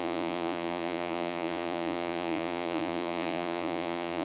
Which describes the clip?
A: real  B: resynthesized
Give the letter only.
B